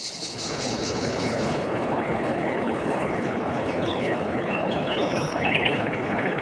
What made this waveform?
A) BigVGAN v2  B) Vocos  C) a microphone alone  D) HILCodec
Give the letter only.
D